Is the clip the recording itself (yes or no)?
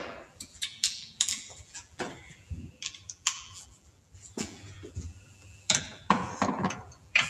no